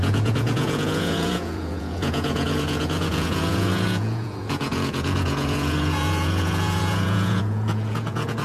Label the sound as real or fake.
fake